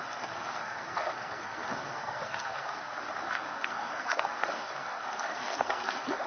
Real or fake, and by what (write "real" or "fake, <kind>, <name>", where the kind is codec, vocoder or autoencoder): fake, codec, SNAC